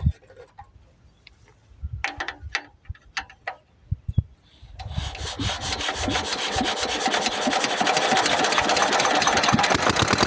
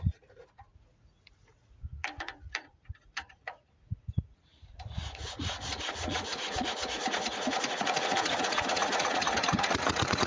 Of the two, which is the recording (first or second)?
first